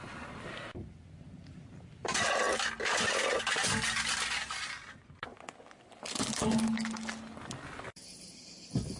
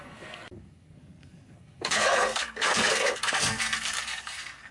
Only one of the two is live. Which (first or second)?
first